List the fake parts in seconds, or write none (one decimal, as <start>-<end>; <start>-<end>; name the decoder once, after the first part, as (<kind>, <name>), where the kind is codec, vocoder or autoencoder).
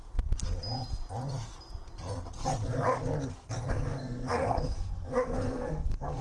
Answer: 3.7-6.2 (codec, SNAC)